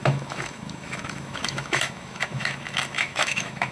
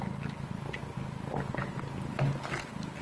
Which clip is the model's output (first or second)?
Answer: first